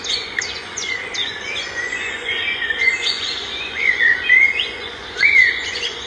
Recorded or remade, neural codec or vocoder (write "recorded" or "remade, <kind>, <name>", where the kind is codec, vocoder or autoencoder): remade, vocoder, Vocos